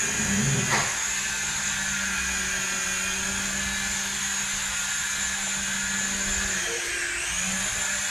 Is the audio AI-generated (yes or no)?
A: no